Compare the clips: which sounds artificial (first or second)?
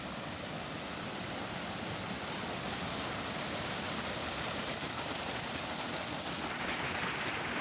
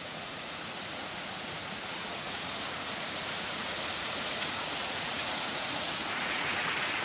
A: second